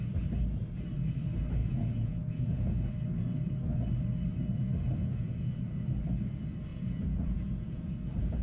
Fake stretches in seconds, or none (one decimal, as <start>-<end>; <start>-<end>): 1.6-2.9; 5.0-5.5; 6.7-7.9